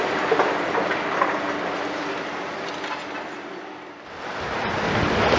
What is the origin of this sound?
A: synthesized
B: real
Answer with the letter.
B